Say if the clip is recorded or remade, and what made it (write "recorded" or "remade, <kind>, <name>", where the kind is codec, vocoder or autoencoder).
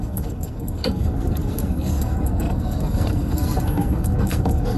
remade, codec, SNAC